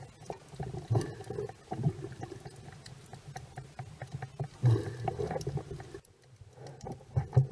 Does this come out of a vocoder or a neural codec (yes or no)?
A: no